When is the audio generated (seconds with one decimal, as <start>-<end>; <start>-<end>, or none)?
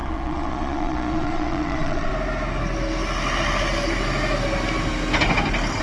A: 0.0-2.1